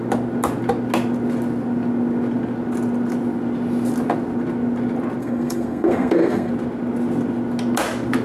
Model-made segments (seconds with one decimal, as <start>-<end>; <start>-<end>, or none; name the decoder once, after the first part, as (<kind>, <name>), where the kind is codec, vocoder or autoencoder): 5.2-6.5 (codec, SNAC)